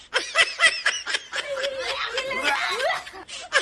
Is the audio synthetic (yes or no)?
no